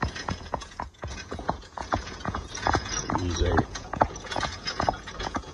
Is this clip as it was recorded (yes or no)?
no